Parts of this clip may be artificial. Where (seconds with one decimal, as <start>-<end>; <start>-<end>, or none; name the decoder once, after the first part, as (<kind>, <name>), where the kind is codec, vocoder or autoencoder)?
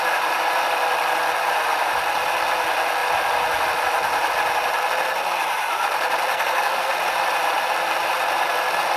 6.3-6.9 (codec, SNAC)